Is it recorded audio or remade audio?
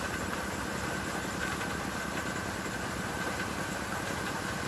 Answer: recorded